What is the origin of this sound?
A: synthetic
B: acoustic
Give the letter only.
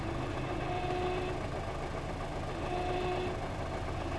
B